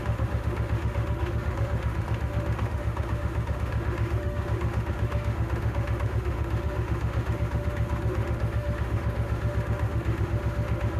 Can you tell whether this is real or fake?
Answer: fake